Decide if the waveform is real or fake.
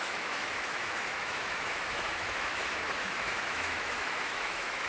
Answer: fake